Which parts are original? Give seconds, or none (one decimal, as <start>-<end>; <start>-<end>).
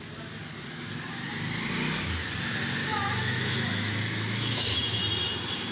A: 0.0-2.8; 5.0-5.7